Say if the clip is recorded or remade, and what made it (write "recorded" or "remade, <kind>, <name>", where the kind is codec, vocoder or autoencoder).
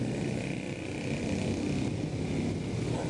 recorded